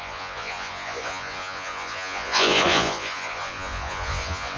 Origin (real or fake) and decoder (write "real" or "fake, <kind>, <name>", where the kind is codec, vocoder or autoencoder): fake, vocoder, Vocos